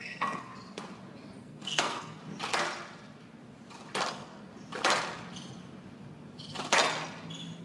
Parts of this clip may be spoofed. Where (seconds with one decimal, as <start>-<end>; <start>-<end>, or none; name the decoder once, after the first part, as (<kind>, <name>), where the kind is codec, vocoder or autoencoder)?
0.0-0.5 (codec, SNAC); 1.4-2.2; 4.1-4.5